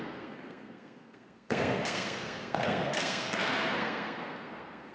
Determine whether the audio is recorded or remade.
remade